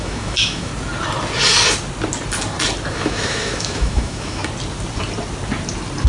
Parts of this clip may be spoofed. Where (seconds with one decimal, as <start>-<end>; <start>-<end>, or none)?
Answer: 0.0-0.7; 2.9-4.4